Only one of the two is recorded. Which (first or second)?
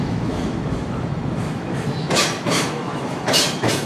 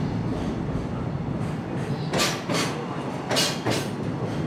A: second